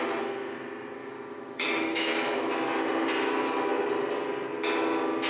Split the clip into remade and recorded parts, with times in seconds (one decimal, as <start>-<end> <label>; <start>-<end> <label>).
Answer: 0.0-1.0 recorded; 1.0-2.5 remade; 2.5-5.3 recorded